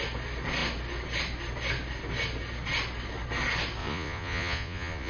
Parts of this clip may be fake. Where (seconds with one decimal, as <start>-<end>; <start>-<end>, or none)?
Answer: 3.8-5.1

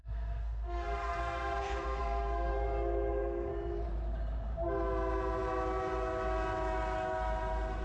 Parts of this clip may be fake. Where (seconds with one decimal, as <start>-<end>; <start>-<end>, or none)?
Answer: 0.0-2.5; 3.1-3.5

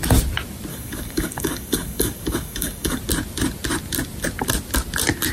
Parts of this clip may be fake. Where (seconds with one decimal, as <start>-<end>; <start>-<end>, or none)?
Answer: 0.7-3.0

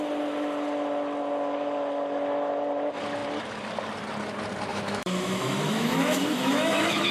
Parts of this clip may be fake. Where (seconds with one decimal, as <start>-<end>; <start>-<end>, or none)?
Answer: 4.7-7.1

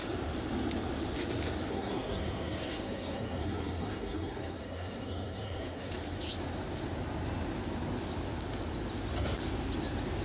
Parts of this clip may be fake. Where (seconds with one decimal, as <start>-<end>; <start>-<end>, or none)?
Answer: 1.7-5.9